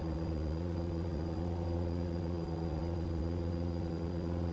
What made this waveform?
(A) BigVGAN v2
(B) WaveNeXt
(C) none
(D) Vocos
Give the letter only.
B